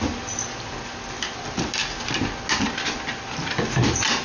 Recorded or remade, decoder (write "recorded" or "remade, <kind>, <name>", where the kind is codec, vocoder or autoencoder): recorded